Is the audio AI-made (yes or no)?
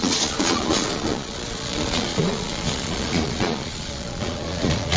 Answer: yes